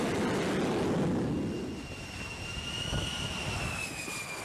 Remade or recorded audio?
recorded